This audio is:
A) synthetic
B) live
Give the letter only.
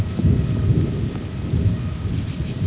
B